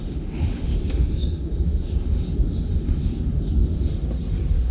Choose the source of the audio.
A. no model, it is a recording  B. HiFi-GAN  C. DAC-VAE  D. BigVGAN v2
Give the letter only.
C